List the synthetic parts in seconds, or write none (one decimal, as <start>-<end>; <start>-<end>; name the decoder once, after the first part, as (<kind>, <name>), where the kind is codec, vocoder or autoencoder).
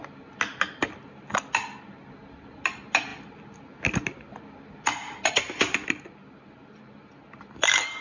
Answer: 6.6-8.0 (vocoder, BigVGAN v2)